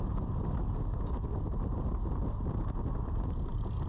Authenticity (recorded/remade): recorded